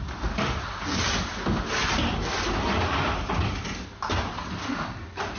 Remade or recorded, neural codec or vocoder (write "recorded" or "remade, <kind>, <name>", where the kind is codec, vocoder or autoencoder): recorded